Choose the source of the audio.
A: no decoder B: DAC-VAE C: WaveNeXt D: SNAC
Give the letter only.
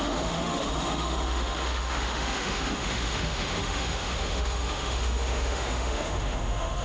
B